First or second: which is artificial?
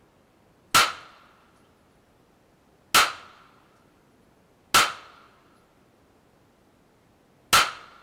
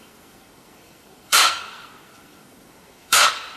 second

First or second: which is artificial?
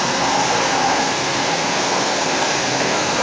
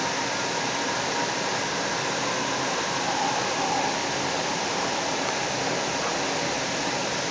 first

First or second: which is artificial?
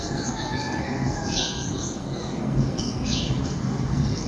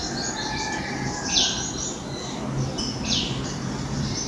first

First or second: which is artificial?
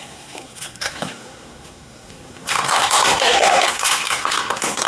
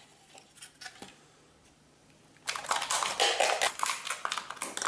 first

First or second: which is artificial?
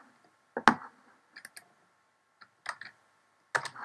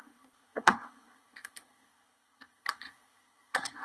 second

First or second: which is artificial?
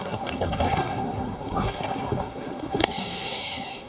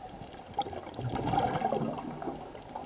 first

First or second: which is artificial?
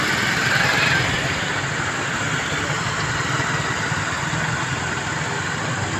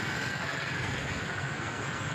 second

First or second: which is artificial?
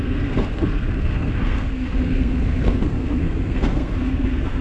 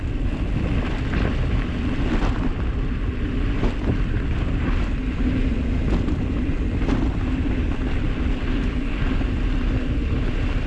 first